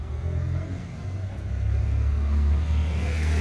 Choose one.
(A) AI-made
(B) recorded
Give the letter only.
A